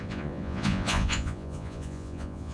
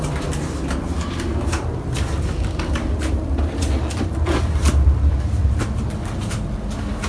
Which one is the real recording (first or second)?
second